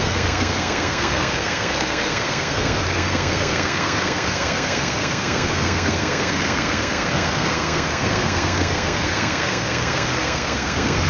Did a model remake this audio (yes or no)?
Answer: yes